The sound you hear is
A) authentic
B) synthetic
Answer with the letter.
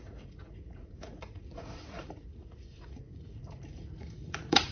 B